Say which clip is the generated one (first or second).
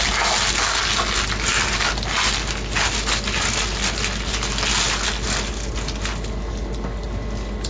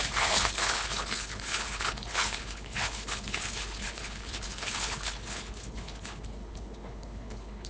second